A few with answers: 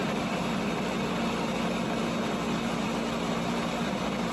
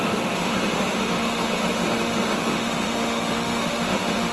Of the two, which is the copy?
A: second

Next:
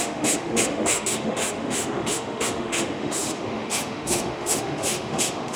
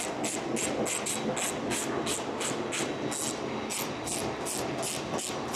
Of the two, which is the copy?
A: first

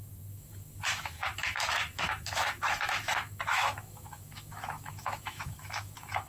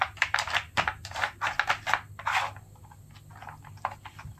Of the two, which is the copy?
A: first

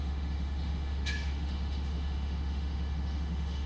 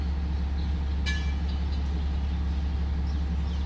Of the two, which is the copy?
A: first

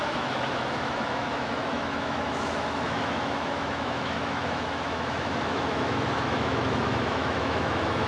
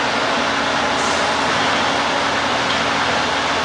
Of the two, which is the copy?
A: first